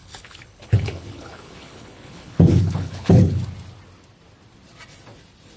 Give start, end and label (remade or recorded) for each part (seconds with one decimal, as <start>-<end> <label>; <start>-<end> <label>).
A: 0.0-3.4 remade; 3.4-5.6 recorded